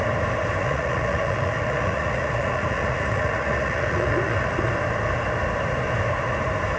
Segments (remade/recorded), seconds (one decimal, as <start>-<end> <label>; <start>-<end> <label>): 0.0-0.6 recorded; 0.6-4.7 remade; 4.7-6.8 recorded